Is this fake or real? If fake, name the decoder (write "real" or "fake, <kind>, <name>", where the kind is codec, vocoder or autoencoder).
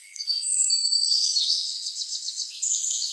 fake, codec, SNAC